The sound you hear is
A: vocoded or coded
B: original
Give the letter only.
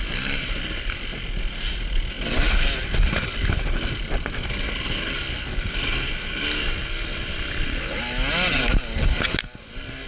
B